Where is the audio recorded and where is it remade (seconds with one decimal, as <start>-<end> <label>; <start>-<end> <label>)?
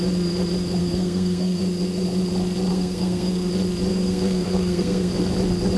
0.0-0.8 recorded; 0.8-1.6 remade; 1.6-2.7 recorded; 2.7-3.5 remade; 3.5-3.9 recorded; 3.9-5.1 remade; 5.1-5.8 recorded